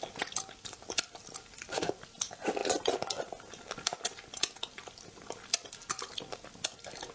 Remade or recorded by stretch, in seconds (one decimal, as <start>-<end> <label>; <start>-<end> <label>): 0.0-7.1 recorded